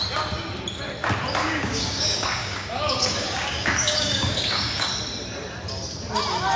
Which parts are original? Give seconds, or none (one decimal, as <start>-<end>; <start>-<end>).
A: 0.0-1.4; 4.9-6.6